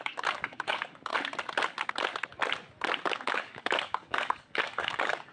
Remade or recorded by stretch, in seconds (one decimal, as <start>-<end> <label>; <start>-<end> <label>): 0.0-1.1 remade; 1.1-3.1 recorded; 3.1-5.3 remade